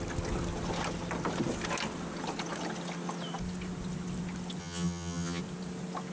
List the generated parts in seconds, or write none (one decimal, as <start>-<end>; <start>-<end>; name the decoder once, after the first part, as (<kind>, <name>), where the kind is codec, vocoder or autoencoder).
4.6-5.4 (vocoder, HiFi-GAN)